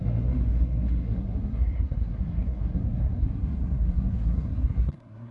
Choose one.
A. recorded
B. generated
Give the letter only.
B